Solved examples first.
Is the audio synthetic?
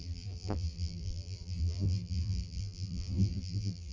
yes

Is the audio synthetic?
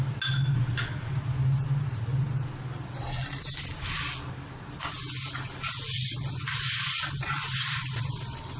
no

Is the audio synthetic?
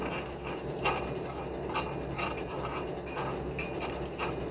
no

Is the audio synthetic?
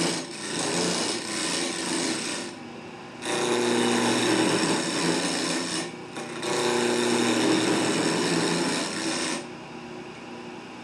no